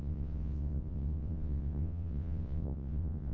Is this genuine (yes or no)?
no